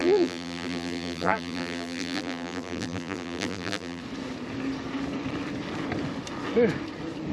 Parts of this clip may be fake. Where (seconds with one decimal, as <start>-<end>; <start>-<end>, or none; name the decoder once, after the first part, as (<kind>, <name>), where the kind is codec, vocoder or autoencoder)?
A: 0.0-4.0 (vocoder, BigVGAN v2)